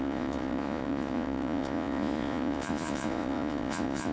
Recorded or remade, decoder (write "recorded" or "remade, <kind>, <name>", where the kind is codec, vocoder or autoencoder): remade, vocoder, Vocos